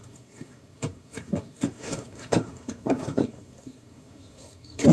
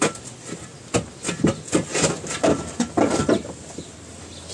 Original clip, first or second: second